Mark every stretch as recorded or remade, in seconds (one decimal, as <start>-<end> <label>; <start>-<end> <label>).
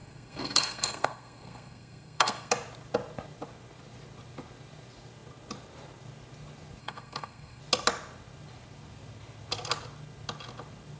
0.0-2.5 remade; 2.5-6.8 recorded; 6.8-7.6 remade; 7.6-11.0 recorded